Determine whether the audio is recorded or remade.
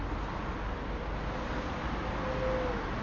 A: recorded